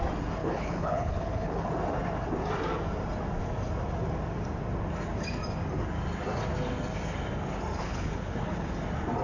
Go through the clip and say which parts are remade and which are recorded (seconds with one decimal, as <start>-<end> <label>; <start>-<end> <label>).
0.0-0.4 recorded; 0.4-1.7 remade; 1.7-7.8 recorded; 7.8-8.7 remade; 8.7-9.2 recorded